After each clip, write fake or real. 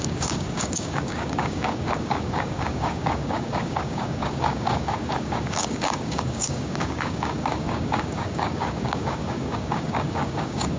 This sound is fake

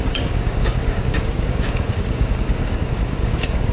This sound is fake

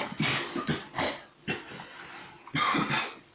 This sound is real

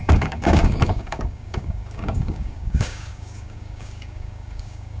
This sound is fake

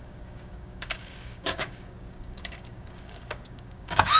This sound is fake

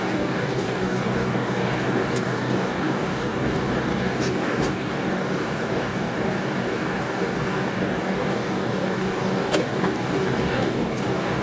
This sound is fake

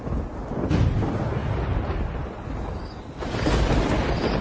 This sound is real